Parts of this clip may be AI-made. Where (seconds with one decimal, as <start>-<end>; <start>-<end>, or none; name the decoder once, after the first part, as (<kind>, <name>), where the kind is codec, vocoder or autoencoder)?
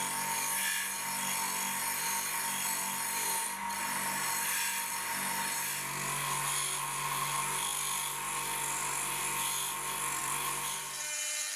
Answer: 10.2-11.0 (vocoder, BigVGAN v2)